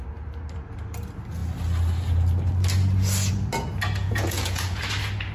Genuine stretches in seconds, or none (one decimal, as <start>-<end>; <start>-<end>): 0.0-4.0; 4.8-5.3